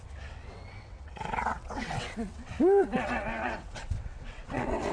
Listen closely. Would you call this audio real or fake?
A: fake